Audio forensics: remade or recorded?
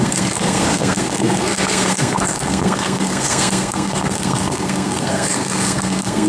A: remade